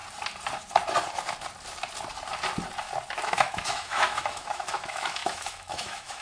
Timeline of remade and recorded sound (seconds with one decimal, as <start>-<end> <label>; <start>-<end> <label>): 0.0-3.2 recorded; 3.2-6.2 remade